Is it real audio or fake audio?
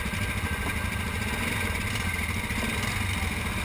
real